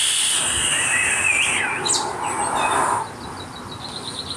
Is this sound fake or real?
real